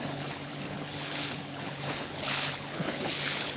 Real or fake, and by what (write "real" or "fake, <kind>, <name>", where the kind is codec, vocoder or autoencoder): fake, codec, HILCodec